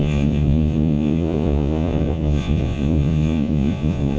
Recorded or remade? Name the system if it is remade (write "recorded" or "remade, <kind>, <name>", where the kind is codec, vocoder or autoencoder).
remade, vocoder, Vocos